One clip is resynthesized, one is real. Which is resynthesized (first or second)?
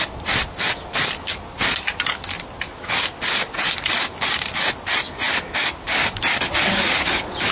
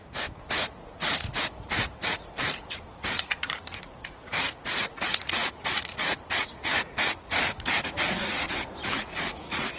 second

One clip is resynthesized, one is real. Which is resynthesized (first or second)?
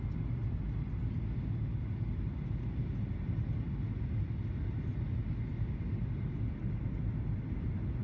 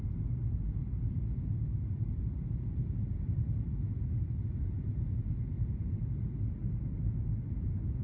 second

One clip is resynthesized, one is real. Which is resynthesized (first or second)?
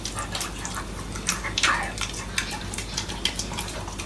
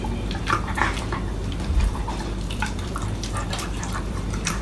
second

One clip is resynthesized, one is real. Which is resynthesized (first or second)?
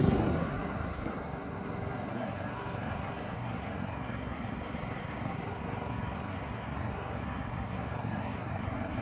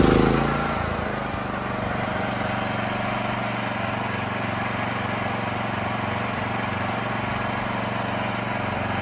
first